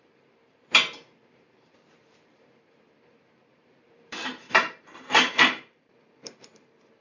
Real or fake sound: fake